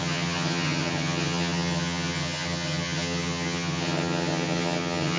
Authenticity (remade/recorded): remade